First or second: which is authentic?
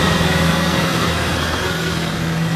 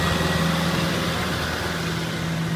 second